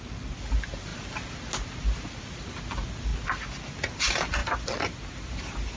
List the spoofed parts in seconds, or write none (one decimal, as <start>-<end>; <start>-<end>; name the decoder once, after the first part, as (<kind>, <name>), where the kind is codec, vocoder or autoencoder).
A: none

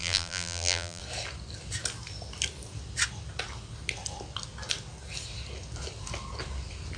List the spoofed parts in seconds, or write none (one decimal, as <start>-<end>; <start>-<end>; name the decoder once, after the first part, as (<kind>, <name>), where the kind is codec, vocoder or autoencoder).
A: 0.0-1.0 (vocoder, BigVGAN v2)

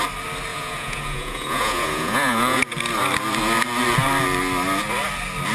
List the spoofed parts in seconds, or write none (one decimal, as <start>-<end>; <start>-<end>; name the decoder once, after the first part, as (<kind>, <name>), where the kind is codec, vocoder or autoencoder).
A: 0.5-2.6 (vocoder, Vocos)

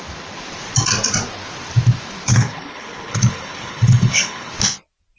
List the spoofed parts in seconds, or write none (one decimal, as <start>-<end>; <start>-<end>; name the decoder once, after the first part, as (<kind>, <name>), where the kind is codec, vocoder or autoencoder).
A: 2.3-4.5 (codec, HILCodec)

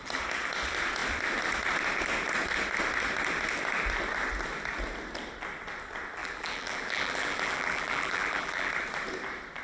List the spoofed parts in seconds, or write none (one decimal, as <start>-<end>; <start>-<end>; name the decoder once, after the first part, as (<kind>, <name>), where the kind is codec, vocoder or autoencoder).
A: 6.2-8.7 (vocoder, BigVGAN v2)